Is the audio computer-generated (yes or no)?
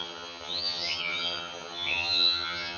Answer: yes